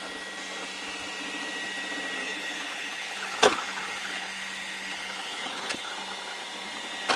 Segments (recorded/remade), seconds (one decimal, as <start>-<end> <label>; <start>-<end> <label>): 0.0-2.2 recorded; 2.2-5.9 remade; 5.9-7.2 recorded